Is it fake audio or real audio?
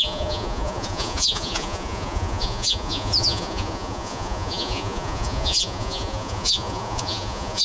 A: fake